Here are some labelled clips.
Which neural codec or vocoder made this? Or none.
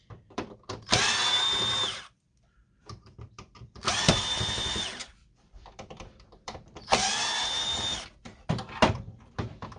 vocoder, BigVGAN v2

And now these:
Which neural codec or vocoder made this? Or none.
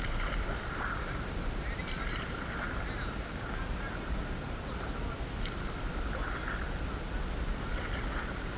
none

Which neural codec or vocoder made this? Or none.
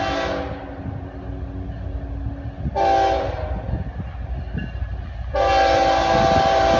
none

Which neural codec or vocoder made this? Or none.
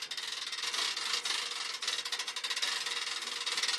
none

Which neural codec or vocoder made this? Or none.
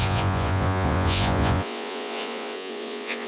vocoder, Vocos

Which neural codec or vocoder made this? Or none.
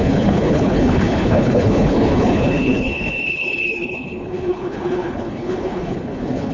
codec, HILCodec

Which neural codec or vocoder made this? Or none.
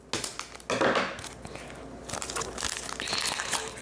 none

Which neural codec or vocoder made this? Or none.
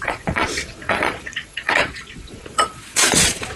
vocoder, Vocos